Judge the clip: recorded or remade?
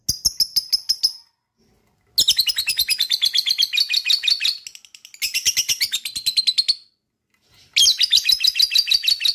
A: recorded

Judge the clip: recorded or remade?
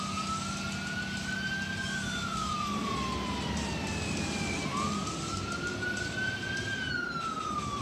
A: recorded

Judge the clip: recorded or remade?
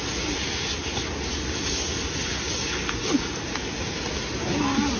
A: recorded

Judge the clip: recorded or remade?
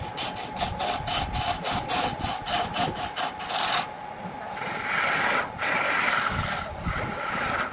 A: recorded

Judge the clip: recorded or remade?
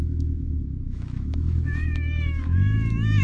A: remade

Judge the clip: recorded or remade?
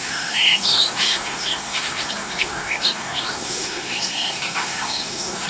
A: remade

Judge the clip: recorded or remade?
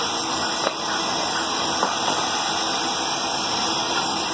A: recorded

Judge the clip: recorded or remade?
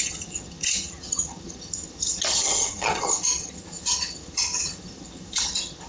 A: remade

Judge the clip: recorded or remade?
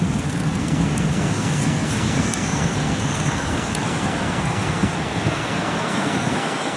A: remade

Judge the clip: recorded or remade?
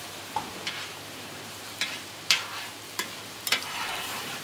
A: remade